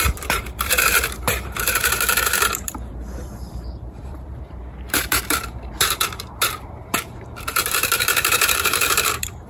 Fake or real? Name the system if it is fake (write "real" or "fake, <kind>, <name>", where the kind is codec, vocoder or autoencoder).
fake, vocoder, BigVGAN v2